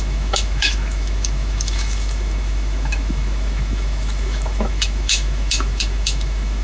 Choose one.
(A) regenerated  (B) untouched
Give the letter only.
A